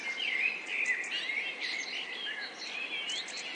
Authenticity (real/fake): real